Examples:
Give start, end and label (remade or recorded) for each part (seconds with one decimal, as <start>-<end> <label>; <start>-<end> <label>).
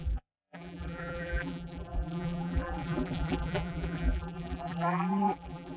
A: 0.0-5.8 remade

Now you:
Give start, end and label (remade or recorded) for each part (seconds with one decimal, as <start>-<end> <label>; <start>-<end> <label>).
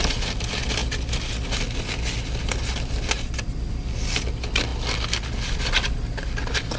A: 0.0-6.8 recorded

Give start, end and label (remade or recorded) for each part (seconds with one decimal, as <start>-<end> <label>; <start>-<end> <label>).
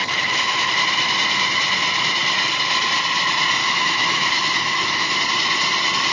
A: 0.0-0.7 remade; 0.7-3.6 recorded; 3.6-5.2 remade; 5.2-6.1 recorded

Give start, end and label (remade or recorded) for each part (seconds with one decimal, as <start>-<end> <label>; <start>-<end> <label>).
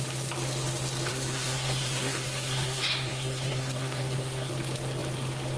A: 0.0-1.1 recorded; 1.1-4.5 remade; 4.5-5.6 recorded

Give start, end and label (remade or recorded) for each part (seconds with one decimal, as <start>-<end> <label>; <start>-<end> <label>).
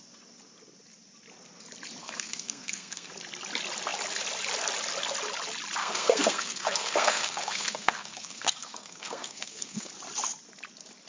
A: 0.0-2.0 recorded; 2.0-3.1 remade; 3.1-5.8 recorded; 5.8-9.9 remade; 9.9-11.1 recorded